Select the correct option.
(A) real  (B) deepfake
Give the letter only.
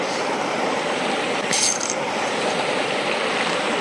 B